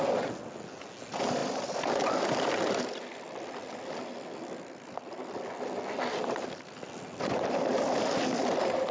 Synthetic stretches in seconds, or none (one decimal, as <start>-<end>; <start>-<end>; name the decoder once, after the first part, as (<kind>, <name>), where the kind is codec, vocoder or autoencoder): 1.4-2.8 (vocoder, BigVGAN v2)